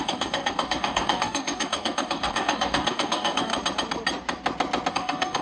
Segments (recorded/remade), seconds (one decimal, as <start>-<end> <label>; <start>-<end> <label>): 0.0-3.5 remade; 3.5-4.9 recorded; 4.9-5.4 remade